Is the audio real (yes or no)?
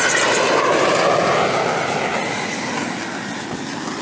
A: yes